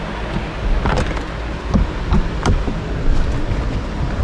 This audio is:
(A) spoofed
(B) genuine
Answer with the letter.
B